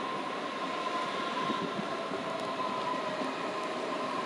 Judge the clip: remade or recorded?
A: recorded